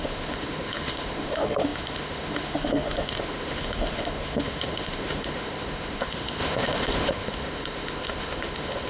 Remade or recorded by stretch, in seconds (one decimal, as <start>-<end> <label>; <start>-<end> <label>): 0.0-8.9 remade